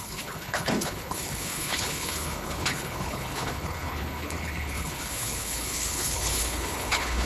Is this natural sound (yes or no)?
no